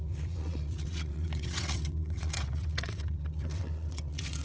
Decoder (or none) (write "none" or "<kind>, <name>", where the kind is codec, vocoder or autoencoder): vocoder, WaveNeXt